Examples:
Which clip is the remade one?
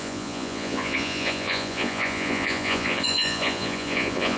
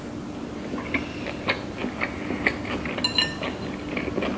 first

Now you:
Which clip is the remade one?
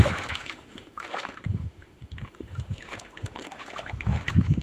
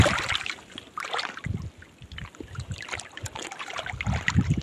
first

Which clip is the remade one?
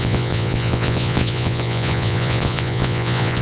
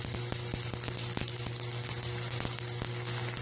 first